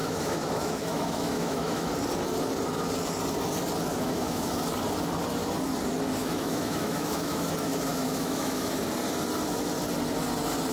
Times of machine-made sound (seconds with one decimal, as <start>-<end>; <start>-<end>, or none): 0.0-1.9; 3.9-4.6; 6.2-7.5; 7.9-8.8